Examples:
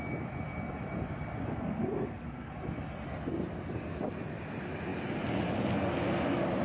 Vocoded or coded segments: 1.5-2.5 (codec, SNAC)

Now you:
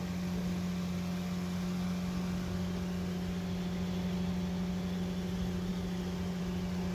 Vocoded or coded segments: none

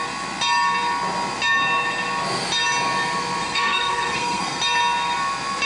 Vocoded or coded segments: 3.4-4.6 (codec, SNAC)

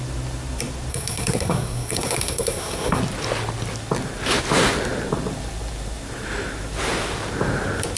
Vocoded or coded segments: 0.9-3.0 (codec, SNAC)

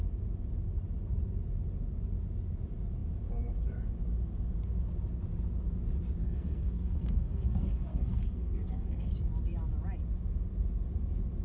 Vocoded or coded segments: 6.2-9.1 (codec, SNAC)

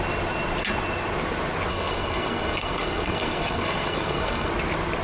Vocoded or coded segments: 1.7-4.5 (codec, SNAC)